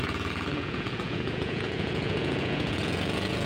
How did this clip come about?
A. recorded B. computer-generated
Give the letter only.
B